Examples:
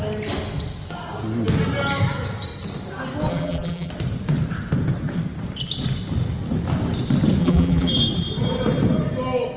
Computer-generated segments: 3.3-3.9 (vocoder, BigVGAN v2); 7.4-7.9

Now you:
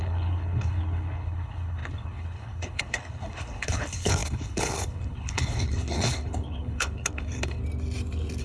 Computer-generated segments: 0.0-7.6 (codec, HILCodec)

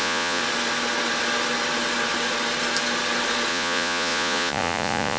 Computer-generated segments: 0.0-0.4 (vocoder, Vocos); 3.5-5.2

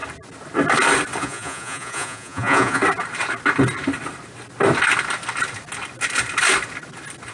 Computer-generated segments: 1.2-2.8 (vocoder, Vocos)